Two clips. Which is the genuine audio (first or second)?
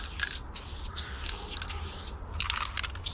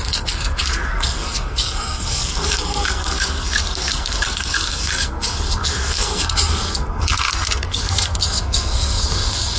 first